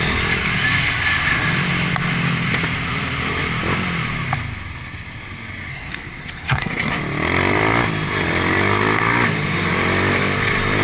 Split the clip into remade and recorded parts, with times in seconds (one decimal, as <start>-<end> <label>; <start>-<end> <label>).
0.0-5.7 recorded; 5.7-7.0 remade; 7.0-10.8 recorded